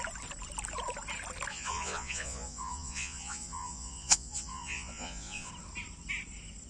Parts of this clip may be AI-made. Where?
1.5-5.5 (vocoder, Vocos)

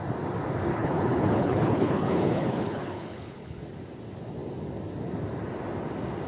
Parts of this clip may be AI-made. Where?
0.7-3.6 (codec, HILCodec)

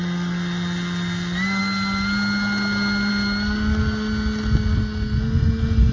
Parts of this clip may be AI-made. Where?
none

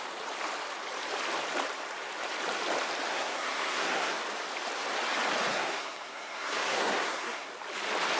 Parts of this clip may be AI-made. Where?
3.1-4.2 (codec, SNAC); 5.5-7.5

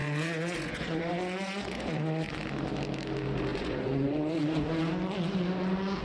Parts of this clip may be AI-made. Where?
0.0-2.4 (vocoder, Vocos); 3.5-4.8

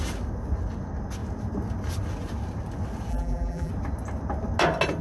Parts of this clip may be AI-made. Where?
3.1-3.7 (vocoder, BigVGAN v2)